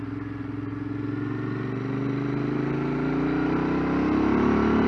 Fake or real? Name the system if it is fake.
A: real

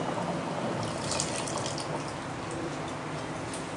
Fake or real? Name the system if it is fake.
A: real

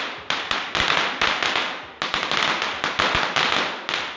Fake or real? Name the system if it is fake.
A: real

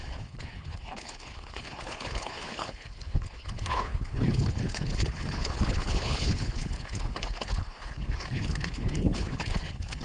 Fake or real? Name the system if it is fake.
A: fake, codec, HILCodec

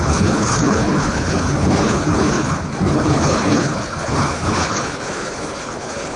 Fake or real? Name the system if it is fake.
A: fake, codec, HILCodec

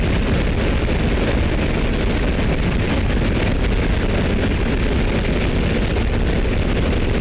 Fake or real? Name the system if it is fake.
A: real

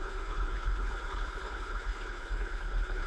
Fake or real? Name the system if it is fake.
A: fake, codec, HILCodec